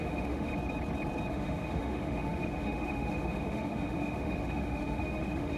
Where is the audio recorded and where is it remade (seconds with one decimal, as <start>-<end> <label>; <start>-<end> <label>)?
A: 0.0-0.5 remade; 0.5-1.3 recorded; 1.3-5.6 remade